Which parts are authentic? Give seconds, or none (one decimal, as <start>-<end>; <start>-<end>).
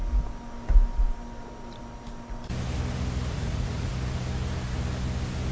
0.0-3.3; 3.9-5.5